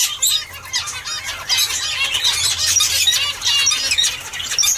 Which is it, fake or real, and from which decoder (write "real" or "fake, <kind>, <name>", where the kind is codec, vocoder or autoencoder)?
real